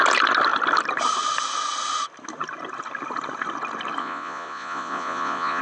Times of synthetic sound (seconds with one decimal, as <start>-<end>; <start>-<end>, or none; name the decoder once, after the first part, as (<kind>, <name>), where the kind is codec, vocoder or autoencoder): 4.0-5.6 (vocoder, Vocos)